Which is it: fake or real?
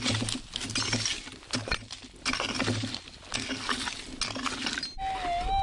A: real